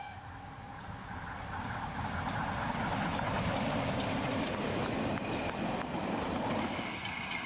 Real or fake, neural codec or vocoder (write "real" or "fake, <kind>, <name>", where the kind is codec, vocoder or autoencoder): real